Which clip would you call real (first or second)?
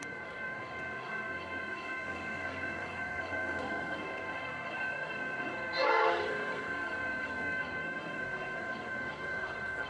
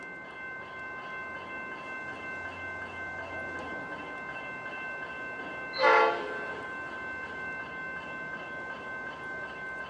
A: second